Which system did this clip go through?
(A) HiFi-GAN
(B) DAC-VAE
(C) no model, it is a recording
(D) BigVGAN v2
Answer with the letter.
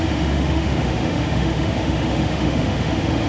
B